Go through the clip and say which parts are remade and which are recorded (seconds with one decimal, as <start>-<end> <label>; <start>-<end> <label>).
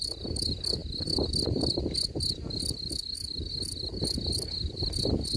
0.0-5.4 recorded